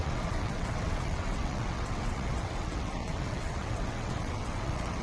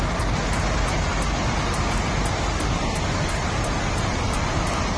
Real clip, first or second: second